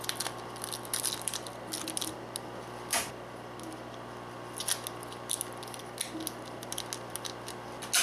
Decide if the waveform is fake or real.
real